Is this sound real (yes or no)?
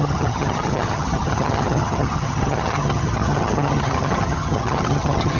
no